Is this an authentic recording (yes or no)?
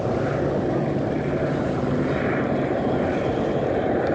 no